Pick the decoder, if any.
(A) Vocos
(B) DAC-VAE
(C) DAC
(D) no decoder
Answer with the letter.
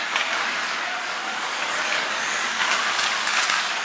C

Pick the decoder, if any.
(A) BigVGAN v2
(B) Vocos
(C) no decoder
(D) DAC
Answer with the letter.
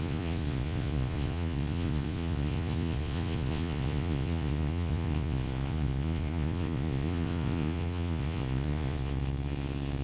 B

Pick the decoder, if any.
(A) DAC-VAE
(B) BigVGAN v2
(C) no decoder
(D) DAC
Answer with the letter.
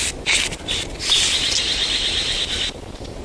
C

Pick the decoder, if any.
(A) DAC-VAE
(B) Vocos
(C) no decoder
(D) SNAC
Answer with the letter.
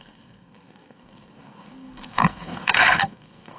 D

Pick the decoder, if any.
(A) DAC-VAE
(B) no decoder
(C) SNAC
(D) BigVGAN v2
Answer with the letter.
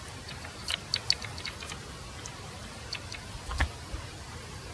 B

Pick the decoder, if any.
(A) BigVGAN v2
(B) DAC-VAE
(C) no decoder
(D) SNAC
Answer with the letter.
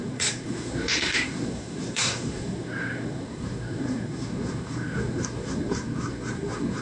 D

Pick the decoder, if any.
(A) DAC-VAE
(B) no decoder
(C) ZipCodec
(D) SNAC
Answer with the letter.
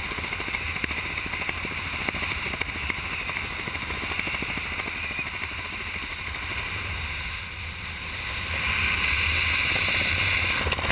B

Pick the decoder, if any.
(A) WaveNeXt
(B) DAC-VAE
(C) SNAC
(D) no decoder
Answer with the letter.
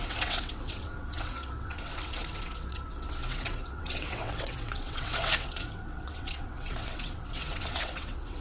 A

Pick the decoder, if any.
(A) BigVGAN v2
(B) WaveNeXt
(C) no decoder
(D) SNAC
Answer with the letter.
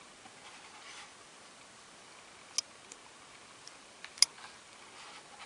C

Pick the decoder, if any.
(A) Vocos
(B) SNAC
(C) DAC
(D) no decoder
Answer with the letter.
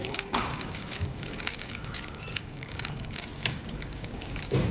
C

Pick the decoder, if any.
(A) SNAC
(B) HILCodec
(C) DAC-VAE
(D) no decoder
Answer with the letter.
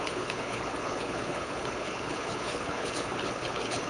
B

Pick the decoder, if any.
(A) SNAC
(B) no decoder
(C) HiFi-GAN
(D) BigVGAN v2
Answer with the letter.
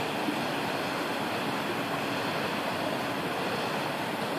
B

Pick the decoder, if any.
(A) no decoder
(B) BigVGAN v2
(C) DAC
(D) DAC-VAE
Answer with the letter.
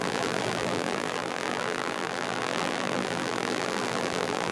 B